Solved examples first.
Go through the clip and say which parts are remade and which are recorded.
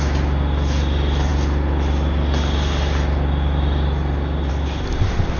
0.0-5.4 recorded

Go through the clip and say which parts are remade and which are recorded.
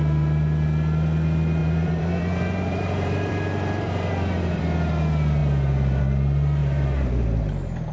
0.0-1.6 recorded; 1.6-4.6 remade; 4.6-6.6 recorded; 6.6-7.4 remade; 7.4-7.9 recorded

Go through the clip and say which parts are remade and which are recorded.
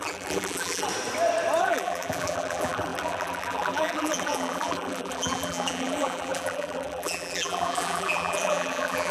0.0-0.9 remade; 0.9-1.6 recorded; 1.6-9.1 remade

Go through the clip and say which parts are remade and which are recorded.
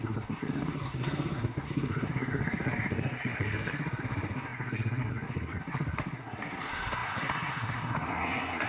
0.0-8.7 remade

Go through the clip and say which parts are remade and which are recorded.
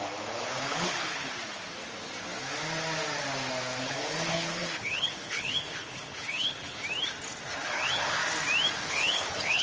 0.0-1.3 remade; 1.3-3.8 recorded; 3.8-6.8 remade; 6.8-7.6 recorded; 7.6-8.2 remade; 8.2-8.9 recorded; 8.9-9.6 remade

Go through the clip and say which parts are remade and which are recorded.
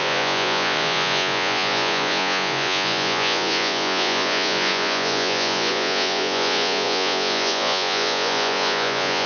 0.0-9.3 remade